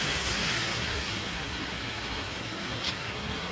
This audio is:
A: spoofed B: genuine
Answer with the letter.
A